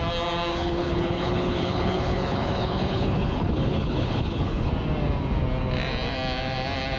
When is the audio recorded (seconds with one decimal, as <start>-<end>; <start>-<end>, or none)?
0.0-0.5; 4.7-7.0